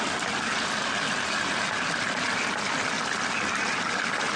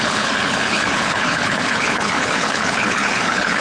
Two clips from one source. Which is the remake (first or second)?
second